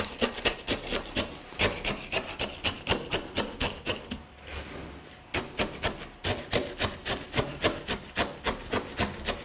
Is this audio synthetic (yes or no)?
no